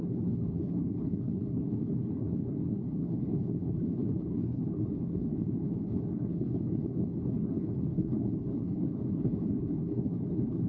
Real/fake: fake